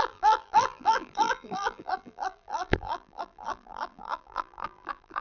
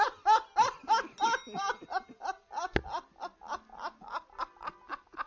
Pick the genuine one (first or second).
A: second